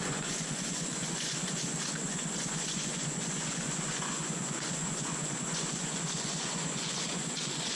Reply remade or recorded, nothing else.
remade